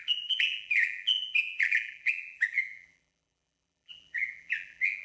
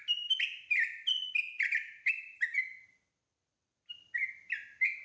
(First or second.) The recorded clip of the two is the second